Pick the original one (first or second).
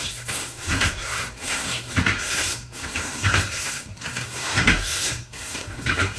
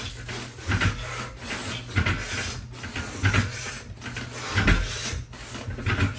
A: second